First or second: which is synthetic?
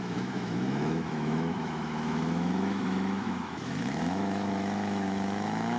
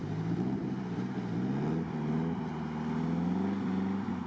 first